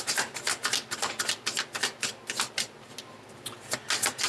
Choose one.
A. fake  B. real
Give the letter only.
B